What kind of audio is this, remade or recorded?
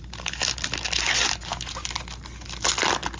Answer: recorded